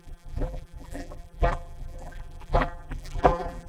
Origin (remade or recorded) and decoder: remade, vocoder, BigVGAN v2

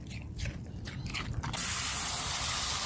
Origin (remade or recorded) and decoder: recorded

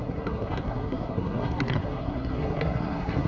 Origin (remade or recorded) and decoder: remade, codec, SNAC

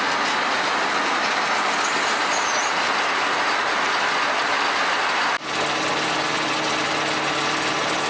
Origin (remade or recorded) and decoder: recorded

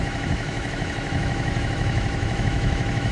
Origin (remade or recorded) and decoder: remade, autoencoder, DAC-VAE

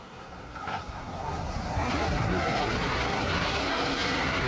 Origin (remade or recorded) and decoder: remade, codec, SNAC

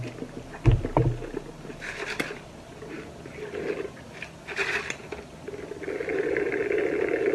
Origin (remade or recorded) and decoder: recorded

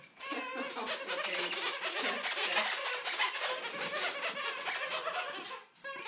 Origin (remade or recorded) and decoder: recorded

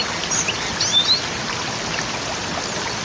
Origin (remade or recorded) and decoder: recorded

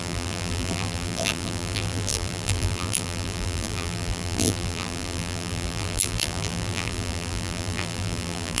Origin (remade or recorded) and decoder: remade, vocoder, BigVGAN v2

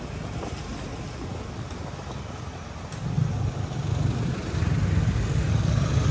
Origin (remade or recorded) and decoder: recorded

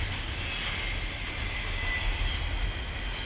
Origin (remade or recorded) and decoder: recorded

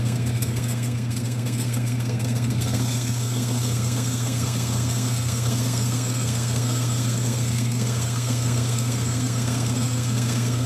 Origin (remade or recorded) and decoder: remade, codec, SNAC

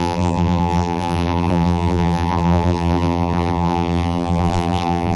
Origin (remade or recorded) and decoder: remade, vocoder, BigVGAN v2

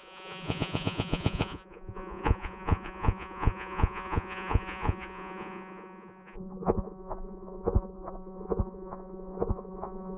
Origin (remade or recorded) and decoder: remade, vocoder, Vocos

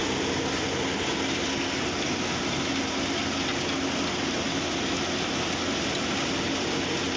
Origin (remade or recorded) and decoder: recorded